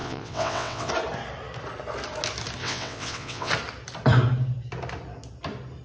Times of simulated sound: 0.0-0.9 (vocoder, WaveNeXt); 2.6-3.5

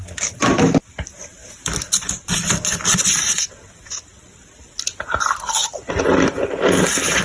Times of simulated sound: none

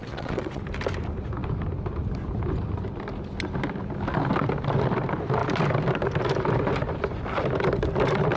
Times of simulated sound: 0.0-0.6 (vocoder, WaveNeXt)

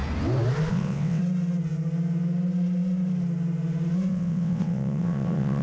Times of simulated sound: 0.7-1.2 (vocoder, WaveNeXt); 4.1-5.6

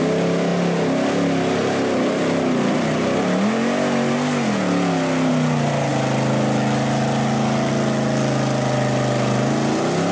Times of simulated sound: none

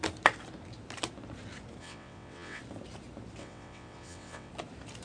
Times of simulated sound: 1.8-2.6 (vocoder, WaveNeXt); 3.4-4.5